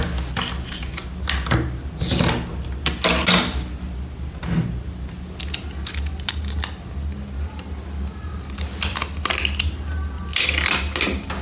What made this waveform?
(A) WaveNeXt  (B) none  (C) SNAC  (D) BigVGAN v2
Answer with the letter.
B